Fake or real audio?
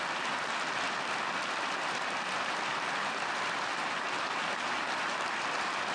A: real